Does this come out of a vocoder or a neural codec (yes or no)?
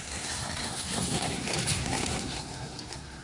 yes